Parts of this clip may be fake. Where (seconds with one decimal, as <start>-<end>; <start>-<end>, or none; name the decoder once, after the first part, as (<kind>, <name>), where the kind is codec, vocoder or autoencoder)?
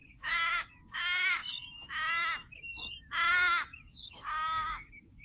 0.0-1.4 (codec, DAC); 3.3-5.2